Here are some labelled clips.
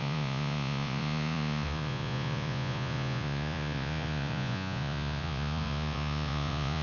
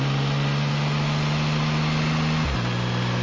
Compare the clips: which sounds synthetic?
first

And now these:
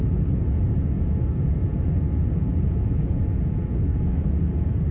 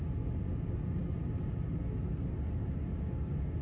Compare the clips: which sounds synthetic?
first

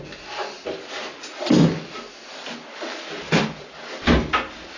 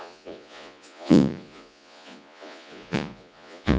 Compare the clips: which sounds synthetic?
second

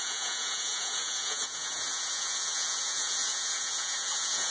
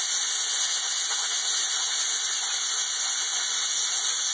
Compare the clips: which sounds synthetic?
first